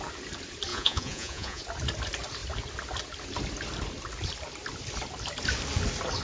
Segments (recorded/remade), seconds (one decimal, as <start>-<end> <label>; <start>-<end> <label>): 0.0-0.7 recorded; 0.7-1.6 remade; 1.6-6.2 recorded